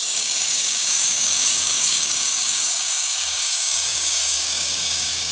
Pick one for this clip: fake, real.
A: fake